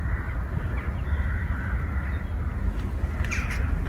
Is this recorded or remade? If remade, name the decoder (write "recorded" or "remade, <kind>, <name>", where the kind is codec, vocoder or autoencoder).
recorded